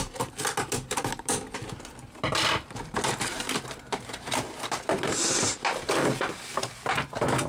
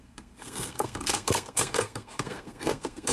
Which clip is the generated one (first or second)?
second